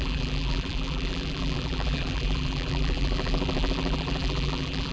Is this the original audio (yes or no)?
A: no